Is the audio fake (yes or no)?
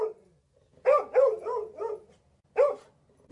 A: no